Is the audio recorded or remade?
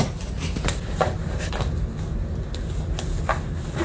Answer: recorded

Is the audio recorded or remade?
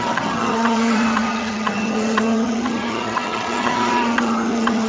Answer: remade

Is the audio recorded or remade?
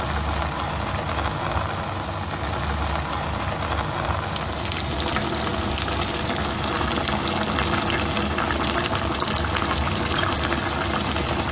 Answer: recorded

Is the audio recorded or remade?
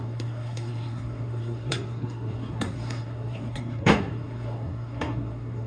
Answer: remade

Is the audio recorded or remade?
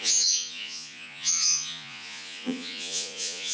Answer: remade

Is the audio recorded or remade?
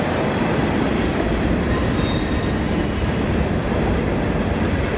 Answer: recorded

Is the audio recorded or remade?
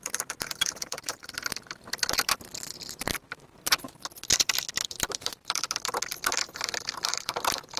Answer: remade